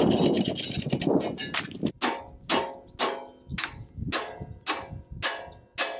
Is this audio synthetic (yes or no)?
no